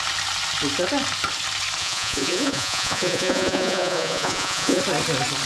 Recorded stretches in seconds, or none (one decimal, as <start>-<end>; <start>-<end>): 0.0-1.8; 4.8-5.5